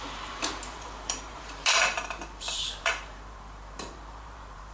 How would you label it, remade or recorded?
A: remade